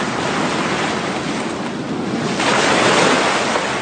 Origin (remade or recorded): recorded